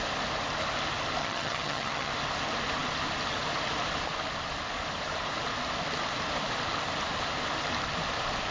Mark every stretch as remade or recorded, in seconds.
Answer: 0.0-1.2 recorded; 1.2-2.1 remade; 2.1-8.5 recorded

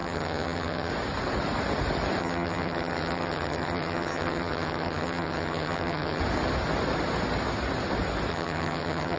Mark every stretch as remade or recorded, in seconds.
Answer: 0.0-0.9 remade; 0.9-2.2 recorded; 2.2-6.2 remade; 6.2-8.3 recorded; 8.3-9.2 remade

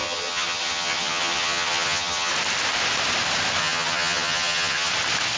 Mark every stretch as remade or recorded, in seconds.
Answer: 0.0-2.3 remade; 2.3-3.6 recorded; 3.6-4.9 remade; 4.9-5.4 recorded